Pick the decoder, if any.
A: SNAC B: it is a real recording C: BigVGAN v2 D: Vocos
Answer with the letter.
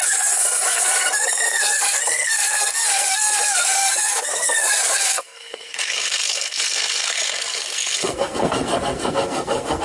A